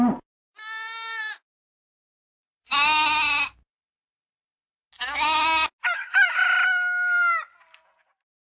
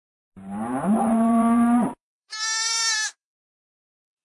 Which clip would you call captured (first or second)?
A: first